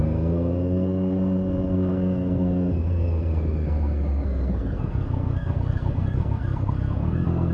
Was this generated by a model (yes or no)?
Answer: yes